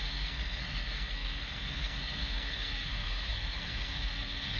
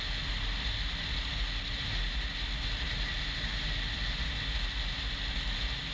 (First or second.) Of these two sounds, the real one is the second